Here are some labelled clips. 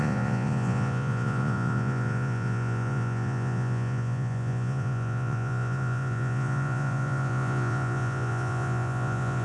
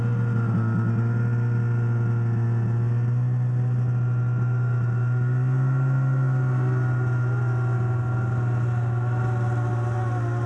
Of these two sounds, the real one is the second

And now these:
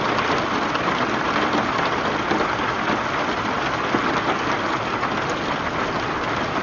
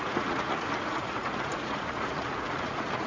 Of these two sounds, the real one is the first